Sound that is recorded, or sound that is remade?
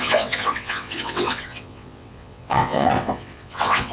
remade